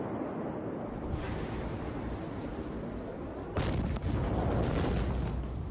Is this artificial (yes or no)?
no